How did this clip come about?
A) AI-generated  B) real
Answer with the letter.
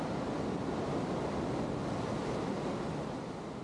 B